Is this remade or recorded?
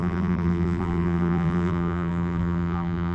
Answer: remade